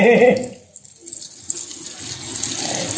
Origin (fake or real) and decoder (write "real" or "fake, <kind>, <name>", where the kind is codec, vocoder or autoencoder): real